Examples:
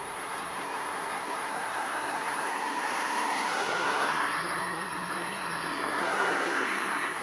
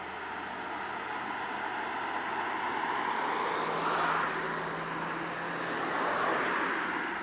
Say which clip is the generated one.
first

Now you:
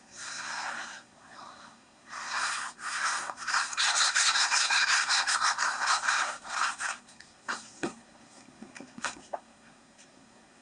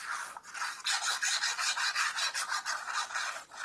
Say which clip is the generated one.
first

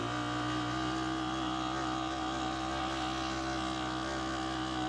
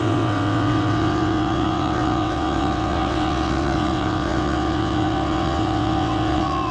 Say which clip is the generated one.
second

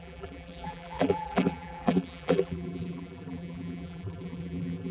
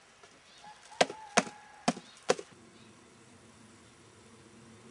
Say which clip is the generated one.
first